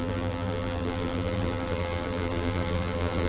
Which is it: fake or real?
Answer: fake